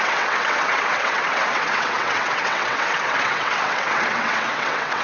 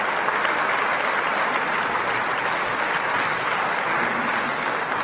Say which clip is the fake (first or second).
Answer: first